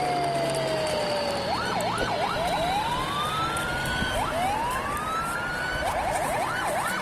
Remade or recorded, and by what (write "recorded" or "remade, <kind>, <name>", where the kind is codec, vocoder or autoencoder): recorded